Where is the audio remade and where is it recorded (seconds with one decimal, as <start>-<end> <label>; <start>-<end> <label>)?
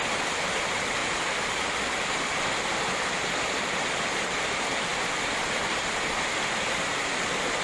0.0-1.0 recorded; 1.0-2.2 remade; 2.2-4.9 recorded; 4.9-6.0 remade; 6.0-7.6 recorded